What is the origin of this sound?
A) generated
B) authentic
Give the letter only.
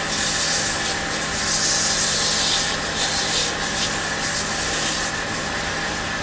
B